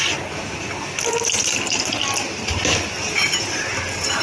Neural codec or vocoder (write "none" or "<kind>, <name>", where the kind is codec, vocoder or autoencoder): none